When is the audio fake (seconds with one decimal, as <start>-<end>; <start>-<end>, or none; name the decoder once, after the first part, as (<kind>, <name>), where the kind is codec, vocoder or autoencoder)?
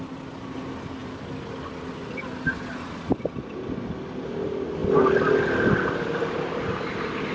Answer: none